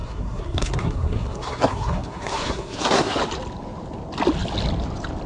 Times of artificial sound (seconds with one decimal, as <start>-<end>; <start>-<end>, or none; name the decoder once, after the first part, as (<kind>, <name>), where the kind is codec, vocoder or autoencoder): 0.0-3.2 (codec, SNAC)